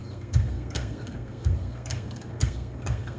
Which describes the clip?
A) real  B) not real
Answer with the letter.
B